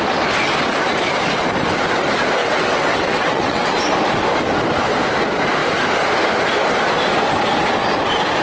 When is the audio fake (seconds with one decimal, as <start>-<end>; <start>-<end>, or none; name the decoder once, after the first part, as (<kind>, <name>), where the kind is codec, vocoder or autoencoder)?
2.4-3.8 (vocoder, WaveNeXt)